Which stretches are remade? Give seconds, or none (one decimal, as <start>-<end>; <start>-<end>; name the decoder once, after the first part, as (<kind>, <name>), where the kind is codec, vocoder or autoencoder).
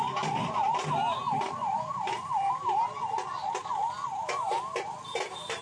none